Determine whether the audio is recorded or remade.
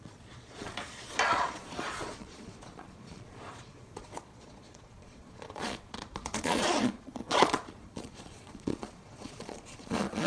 remade